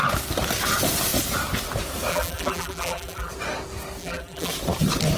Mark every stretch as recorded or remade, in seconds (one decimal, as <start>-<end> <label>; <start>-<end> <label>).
0.0-2.1 recorded; 2.1-3.3 remade; 3.3-4.0 recorded; 4.0-4.5 remade; 4.5-5.2 recorded